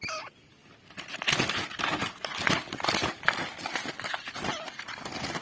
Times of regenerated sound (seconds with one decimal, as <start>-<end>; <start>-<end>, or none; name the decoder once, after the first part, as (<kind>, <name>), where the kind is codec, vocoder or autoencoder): none